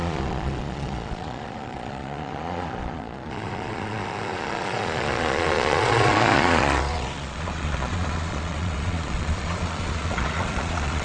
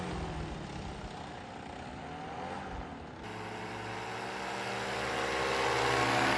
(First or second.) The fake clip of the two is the first